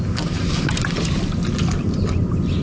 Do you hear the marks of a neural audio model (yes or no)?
no